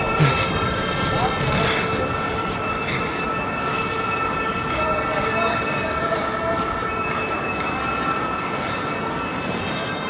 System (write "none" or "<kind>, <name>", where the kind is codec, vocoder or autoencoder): none